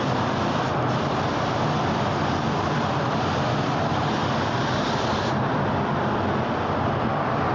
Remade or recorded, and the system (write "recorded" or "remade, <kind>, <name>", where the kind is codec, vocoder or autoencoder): recorded